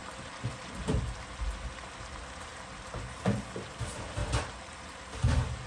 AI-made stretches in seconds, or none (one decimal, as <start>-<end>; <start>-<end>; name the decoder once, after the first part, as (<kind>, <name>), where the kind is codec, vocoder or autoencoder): 0.0-1.0 (vocoder, BigVGAN v2); 4.2-5.1